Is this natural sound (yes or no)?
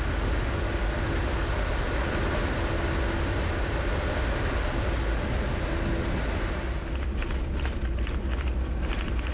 yes